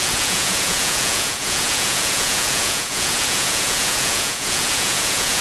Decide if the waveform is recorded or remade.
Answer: remade